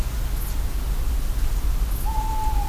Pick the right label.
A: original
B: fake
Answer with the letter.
A